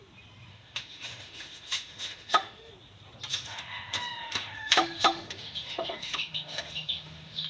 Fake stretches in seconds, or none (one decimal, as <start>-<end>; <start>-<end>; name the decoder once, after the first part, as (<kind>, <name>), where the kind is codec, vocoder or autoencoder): 0.5-2.7 (autoencoder, DAC-VAE); 3.3-7.5